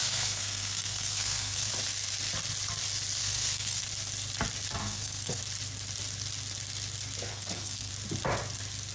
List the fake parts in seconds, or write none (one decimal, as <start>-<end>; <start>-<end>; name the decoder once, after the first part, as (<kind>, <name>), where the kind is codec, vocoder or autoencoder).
0.0-1.7 (codec, SNAC); 3.2-3.8; 4.8-5.4; 7.3-7.9